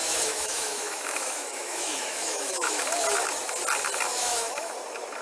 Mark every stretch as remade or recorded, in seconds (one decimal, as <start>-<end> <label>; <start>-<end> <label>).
0.0-2.8 remade; 2.8-4.1 recorded; 4.1-4.7 remade; 4.7-5.2 recorded